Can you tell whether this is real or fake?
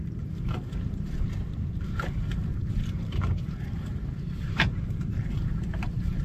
fake